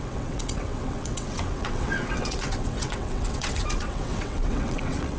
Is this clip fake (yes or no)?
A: yes